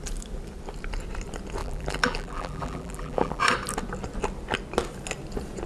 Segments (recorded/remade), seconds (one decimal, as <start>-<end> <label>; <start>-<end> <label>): 0.0-1.6 recorded; 1.6-3.4 remade; 3.4-5.7 recorded